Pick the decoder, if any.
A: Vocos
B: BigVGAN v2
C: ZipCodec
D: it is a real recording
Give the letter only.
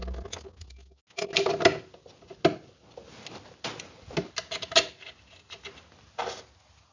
D